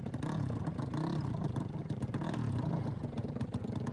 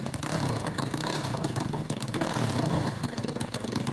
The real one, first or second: first